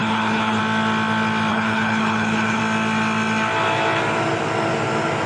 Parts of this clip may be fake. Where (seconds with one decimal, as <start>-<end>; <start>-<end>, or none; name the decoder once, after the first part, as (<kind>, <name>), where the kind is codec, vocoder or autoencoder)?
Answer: 0.0-0.6 (codec, HILCodec); 1.5-2.6